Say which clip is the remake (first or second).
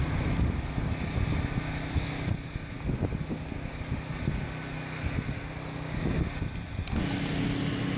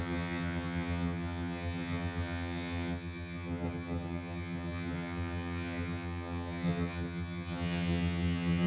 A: second